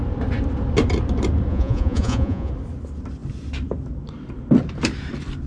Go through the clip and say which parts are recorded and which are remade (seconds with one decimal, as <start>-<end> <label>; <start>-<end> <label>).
0.0-1.5 recorded; 1.5-2.5 remade; 2.5-5.5 recorded